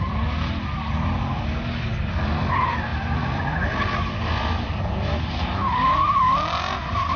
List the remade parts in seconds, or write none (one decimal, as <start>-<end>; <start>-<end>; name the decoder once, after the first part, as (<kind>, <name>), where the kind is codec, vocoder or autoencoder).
1.9-2.5 (vocoder, BigVGAN v2); 2.9-4.2